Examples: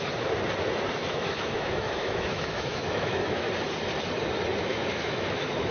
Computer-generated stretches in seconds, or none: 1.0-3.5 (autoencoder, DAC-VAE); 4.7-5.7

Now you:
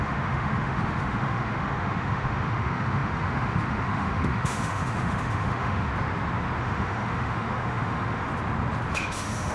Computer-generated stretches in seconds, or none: 0.0-5.9 (autoencoder, DAC-VAE); 6.6-8.3; 8.9-9.5

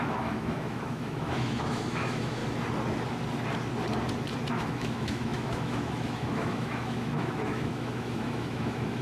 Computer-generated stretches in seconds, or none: 0.0-2.4 (autoencoder, DAC-VAE); 4.5-9.0

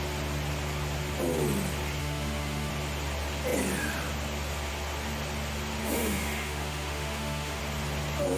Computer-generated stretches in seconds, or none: 2.0-2.7 (autoencoder, DAC-VAE); 5.8-7.6

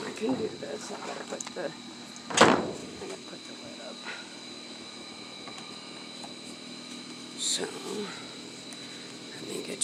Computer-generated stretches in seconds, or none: 2.8-8.1 (autoencoder, DAC-VAE); 8.7-9.3

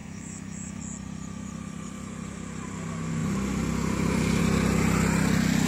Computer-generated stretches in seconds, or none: 0.0-0.8 (autoencoder, DAC-VAE)